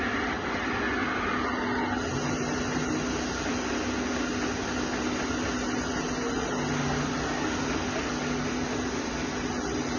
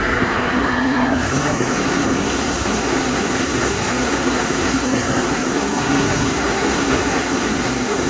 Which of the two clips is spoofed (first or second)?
second